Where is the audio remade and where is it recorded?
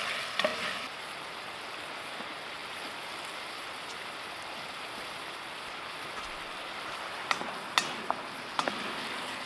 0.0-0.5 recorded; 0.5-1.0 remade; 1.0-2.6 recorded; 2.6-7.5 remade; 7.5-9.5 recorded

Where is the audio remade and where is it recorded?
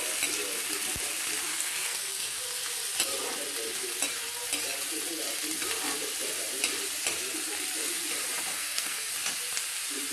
0.0-1.5 recorded; 1.5-2.4 remade; 2.4-8.5 recorded; 8.5-9.1 remade; 9.1-10.1 recorded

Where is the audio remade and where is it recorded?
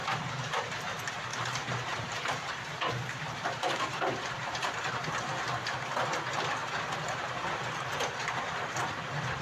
0.0-0.8 remade; 0.8-1.3 recorded; 1.3-4.9 remade; 4.9-9.4 recorded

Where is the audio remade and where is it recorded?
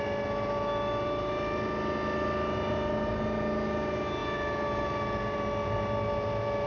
0.0-6.7 recorded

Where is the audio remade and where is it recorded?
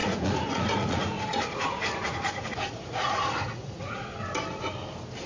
0.0-4.1 remade; 4.1-5.3 recorded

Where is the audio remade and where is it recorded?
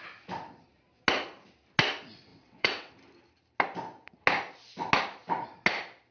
0.0-2.3 recorded; 2.3-2.9 remade; 2.9-6.1 recorded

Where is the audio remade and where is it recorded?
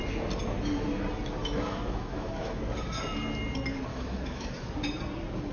0.0-1.4 recorded; 1.4-2.6 remade; 2.6-3.9 recorded; 3.9-4.7 remade; 4.7-5.5 recorded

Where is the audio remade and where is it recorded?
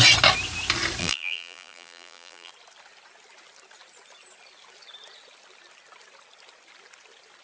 0.0-1.0 recorded; 1.0-2.5 remade; 2.5-7.4 recorded